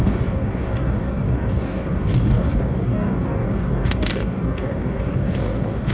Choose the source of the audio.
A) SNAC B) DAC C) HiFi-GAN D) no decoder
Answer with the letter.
B